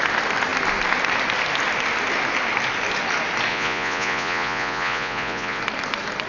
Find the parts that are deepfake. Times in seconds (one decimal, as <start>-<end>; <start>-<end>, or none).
3.5-5.6